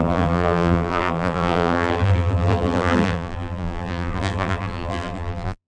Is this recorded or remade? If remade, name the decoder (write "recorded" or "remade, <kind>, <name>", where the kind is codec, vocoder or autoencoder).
remade, vocoder, BigVGAN v2